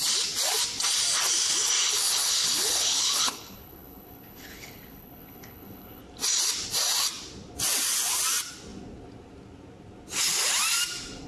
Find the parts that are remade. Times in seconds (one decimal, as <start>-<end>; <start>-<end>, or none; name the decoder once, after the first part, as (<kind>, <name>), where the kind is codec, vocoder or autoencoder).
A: 1.8-6.0 (codec, HILCodec)